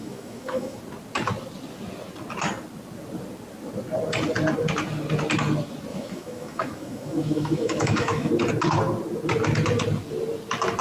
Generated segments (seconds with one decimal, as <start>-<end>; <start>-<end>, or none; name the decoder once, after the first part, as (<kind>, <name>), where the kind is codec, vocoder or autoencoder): 0.0-0.8 (autoencoder, DAC-VAE); 5.9-8.3